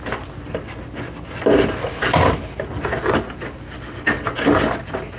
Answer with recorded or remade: recorded